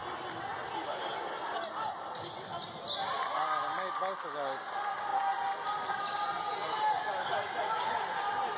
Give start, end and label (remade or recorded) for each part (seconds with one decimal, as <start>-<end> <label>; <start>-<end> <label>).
0.0-8.6 recorded